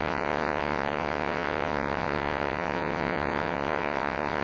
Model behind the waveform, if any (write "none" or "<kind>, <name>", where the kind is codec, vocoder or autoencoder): vocoder, WaveNeXt